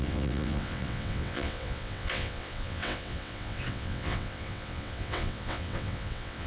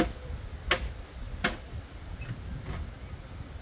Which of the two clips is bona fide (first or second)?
second